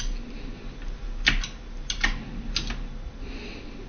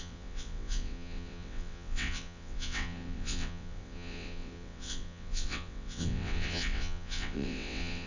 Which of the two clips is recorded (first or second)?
first